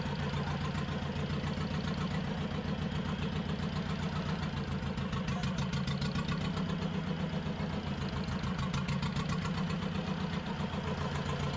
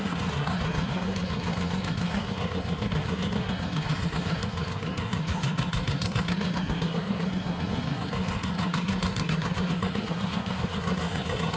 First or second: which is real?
first